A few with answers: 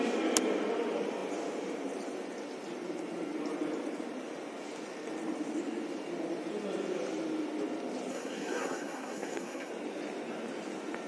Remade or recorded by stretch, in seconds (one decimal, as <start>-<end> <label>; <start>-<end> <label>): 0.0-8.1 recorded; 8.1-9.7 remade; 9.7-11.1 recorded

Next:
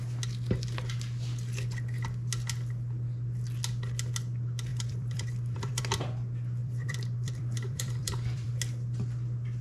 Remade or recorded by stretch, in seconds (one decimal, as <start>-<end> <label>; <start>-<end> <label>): 0.0-4.7 recorded; 4.7-5.8 remade; 5.8-6.6 recorded; 6.6-8.5 remade; 8.5-9.6 recorded

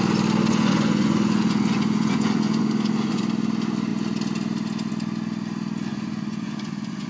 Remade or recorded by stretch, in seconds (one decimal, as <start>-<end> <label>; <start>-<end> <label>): 0.0-0.5 recorded; 0.5-3.2 remade; 3.2-5.9 recorded; 5.9-7.1 remade

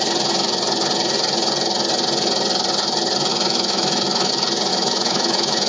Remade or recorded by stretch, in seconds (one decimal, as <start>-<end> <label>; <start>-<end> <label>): 0.0-3.3 recorded; 3.3-4.3 remade; 4.3-4.7 recorded; 4.7-5.7 remade

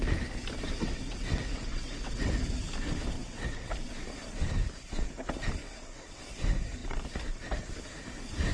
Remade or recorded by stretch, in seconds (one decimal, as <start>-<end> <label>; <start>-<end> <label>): 0.0-0.8 recorded; 0.8-2.3 remade; 2.3-3.2 recorded; 3.2-3.7 remade; 3.7-5.6 recorded; 5.6-6.2 remade; 6.2-8.5 recorded

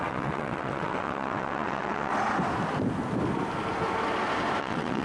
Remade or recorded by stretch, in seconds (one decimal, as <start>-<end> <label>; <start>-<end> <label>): 0.0-2.1 remade; 2.1-4.6 recorded; 4.6-5.0 remade